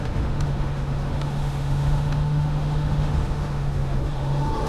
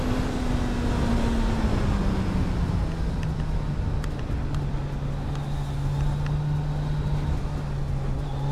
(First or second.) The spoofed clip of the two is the first